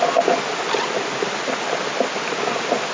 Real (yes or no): yes